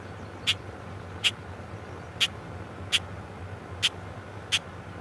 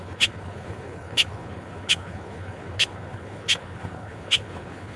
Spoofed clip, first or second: second